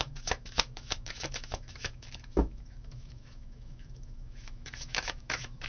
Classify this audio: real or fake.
fake